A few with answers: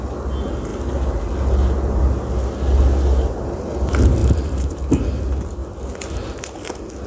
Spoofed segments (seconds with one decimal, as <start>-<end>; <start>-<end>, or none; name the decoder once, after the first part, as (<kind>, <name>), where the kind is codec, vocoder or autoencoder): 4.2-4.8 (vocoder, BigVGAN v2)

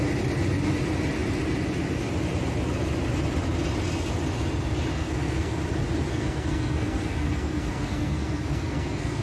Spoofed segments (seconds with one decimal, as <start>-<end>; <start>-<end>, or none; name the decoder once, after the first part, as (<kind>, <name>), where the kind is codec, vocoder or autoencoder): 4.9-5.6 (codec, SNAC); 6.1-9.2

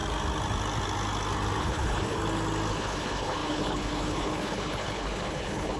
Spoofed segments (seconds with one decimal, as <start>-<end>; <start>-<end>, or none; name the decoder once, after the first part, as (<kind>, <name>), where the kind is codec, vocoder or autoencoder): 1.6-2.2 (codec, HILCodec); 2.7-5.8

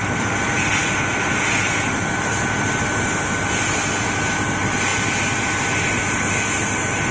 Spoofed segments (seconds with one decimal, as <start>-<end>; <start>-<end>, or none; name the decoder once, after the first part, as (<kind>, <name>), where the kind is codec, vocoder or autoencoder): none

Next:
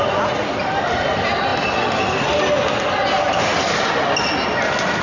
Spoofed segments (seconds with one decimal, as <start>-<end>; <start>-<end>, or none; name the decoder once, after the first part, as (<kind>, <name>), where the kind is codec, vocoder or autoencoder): none

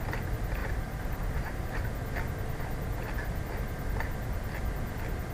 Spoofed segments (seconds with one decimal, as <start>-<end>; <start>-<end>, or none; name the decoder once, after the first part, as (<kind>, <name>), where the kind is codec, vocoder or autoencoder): 0.6-1.8 (vocoder, BigVGAN v2)